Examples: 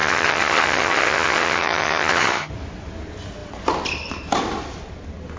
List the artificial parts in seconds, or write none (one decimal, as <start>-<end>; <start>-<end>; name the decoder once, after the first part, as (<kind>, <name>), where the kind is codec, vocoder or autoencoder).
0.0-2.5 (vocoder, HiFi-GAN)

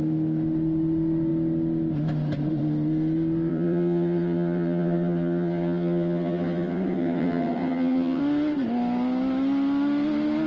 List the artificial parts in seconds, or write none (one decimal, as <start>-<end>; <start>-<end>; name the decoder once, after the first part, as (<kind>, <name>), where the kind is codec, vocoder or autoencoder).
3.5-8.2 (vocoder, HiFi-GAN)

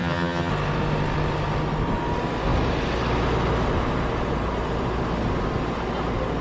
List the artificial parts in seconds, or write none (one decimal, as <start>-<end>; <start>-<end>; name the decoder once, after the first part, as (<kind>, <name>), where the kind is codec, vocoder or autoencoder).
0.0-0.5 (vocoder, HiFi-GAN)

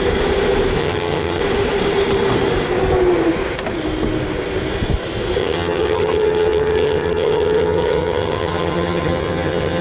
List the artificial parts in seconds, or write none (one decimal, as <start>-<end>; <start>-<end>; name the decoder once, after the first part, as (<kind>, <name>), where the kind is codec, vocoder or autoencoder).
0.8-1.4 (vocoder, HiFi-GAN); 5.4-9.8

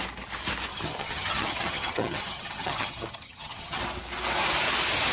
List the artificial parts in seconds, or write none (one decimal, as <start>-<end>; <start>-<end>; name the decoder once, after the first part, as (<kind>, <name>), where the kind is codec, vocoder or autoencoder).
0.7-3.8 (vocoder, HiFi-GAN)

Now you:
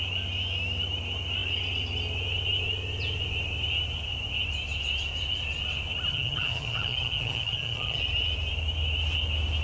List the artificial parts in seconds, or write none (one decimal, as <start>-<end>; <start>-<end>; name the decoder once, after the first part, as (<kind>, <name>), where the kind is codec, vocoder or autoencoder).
6.1-8.0 (vocoder, HiFi-GAN)